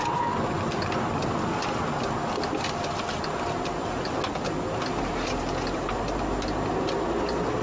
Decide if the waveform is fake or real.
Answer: real